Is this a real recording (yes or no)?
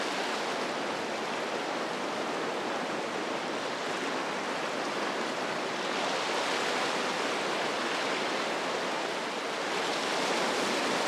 yes